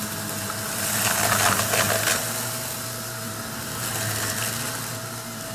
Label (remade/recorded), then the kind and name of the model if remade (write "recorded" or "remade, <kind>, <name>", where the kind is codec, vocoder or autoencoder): recorded